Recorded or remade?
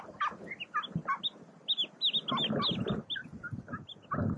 recorded